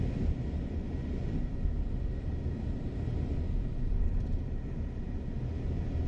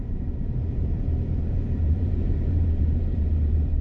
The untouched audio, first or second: first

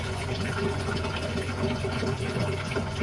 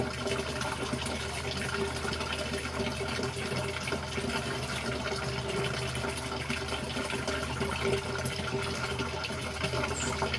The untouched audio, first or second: second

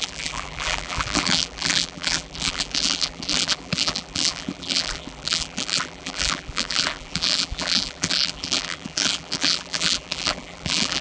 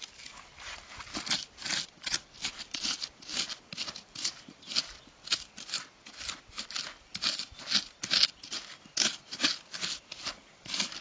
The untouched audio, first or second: second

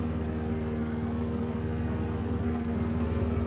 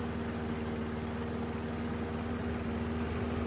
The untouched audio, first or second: second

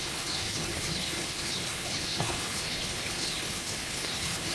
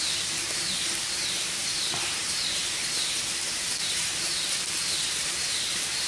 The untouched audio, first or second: second